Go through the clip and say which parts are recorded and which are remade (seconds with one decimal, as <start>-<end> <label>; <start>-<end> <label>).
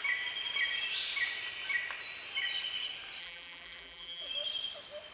0.0-3.2 recorded; 3.2-4.3 remade; 4.3-5.1 recorded